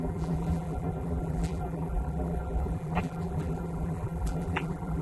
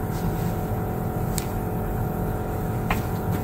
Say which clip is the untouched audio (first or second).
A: second